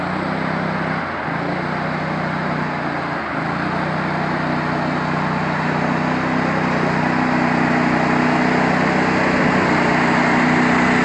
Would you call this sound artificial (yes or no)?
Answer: no